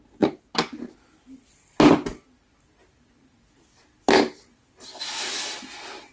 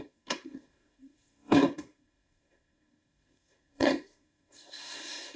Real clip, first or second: first